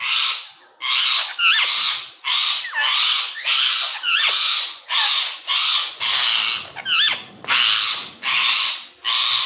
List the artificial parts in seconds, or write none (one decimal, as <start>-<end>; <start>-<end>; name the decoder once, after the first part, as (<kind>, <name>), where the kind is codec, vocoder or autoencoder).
3.9-6.0 (vocoder, Vocos)